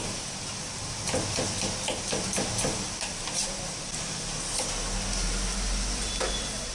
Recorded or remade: recorded